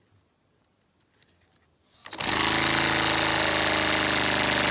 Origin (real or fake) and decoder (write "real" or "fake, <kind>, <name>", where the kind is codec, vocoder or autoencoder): real